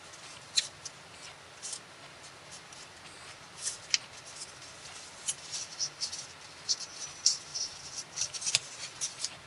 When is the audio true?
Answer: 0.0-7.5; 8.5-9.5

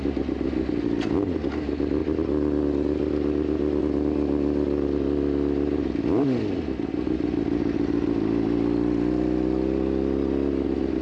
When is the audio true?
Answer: 0.0-11.0